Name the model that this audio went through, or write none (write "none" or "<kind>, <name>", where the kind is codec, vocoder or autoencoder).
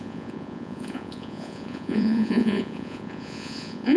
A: vocoder, Vocos